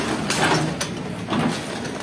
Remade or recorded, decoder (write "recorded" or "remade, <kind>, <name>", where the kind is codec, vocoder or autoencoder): recorded